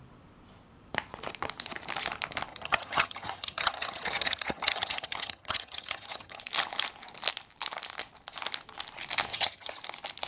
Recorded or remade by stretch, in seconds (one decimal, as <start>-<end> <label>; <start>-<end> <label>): 0.0-2.5 recorded; 2.5-6.4 remade; 6.4-9.3 recorded; 9.3-9.8 remade; 9.8-10.3 recorded

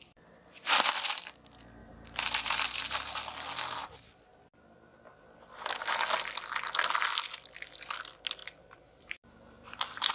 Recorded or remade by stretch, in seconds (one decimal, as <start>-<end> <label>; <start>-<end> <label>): 0.0-1.8 recorded; 1.8-3.2 remade; 3.2-8.4 recorded; 8.4-10.1 remade

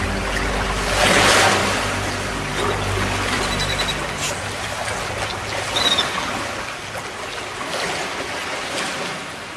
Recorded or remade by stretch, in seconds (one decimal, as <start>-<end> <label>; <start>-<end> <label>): 0.0-9.6 recorded

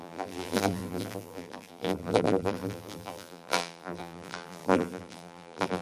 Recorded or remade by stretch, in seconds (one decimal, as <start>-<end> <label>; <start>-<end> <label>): 0.0-5.8 remade

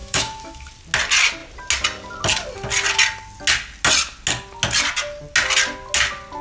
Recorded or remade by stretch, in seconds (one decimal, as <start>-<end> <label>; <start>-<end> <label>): 0.0-0.7 remade; 0.7-6.4 recorded

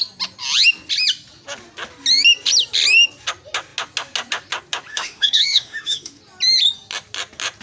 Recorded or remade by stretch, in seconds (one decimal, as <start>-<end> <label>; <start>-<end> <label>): 0.0-4.9 recorded; 4.9-6.2 remade; 6.2-7.6 recorded

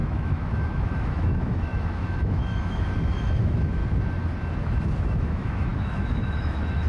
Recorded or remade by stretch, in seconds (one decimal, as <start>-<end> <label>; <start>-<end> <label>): 0.0-3.8 remade; 3.8-5.0 recorded; 5.0-6.9 remade